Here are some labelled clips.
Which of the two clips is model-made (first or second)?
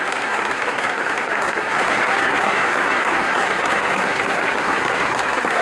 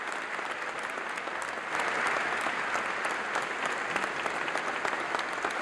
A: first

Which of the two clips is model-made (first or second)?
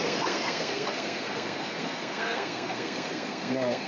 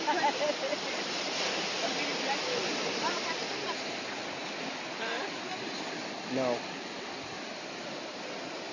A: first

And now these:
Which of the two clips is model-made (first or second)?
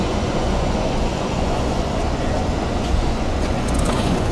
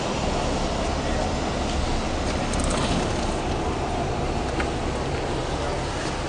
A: first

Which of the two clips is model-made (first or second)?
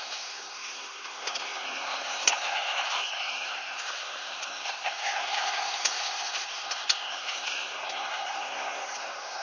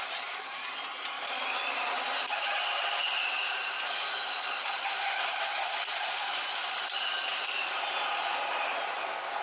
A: first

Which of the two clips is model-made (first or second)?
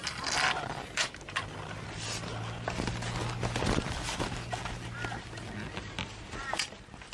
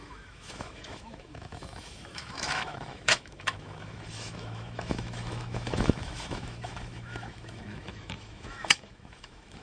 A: second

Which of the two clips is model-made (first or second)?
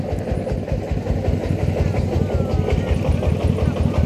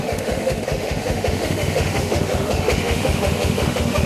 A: second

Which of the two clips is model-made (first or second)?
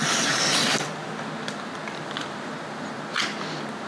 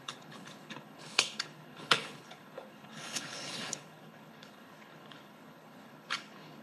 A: second